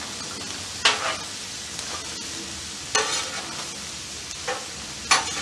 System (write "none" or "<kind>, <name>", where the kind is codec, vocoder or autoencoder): none